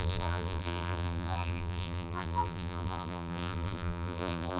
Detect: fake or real fake